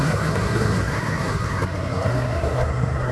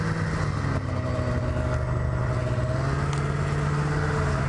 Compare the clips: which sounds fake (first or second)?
first